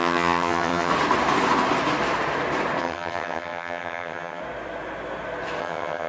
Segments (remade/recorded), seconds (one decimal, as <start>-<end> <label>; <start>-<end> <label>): 0.0-0.9 remade; 0.9-2.8 recorded; 2.8-4.4 remade; 4.4-5.6 recorded; 5.6-6.1 remade

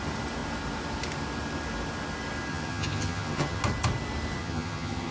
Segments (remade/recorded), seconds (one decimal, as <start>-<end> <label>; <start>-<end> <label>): 0.0-2.5 recorded; 2.5-3.6 remade; 3.6-4.4 recorded; 4.4-5.1 remade

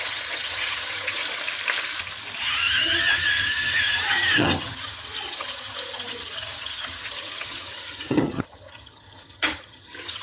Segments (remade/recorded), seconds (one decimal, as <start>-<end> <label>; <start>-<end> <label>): 0.0-1.2 remade; 1.2-2.4 recorded; 2.4-10.2 remade